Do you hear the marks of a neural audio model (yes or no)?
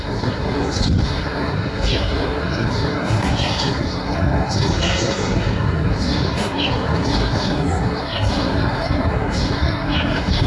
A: yes